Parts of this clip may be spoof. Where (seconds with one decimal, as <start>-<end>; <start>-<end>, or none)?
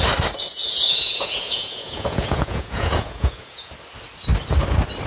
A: 0.6-3.7